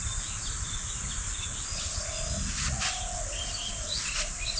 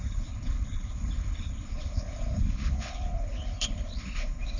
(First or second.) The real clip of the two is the first